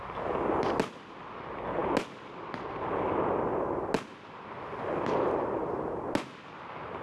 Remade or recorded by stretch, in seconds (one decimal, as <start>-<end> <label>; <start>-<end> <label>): 0.0-7.0 recorded